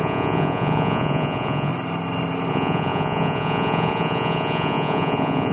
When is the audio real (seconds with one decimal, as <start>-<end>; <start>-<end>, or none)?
1.7-2.5